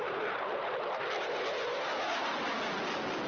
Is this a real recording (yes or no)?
yes